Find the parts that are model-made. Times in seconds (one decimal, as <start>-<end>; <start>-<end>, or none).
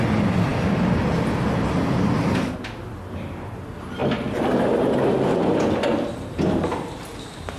none